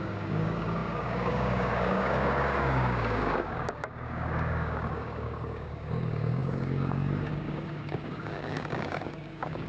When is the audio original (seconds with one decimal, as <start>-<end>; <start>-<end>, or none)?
none